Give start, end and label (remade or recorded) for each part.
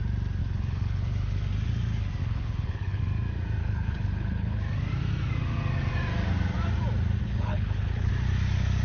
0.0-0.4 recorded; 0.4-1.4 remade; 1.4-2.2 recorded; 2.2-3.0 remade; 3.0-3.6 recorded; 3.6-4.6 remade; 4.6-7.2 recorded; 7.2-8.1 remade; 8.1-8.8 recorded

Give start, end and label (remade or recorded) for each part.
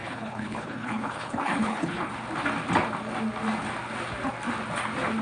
0.0-2.1 remade; 2.1-5.2 recorded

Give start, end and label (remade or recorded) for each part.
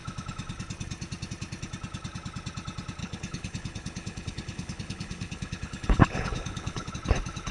0.0-3.0 recorded; 3.0-6.9 remade; 6.9-7.5 recorded